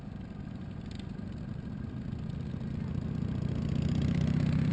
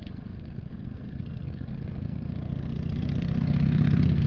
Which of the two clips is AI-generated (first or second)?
second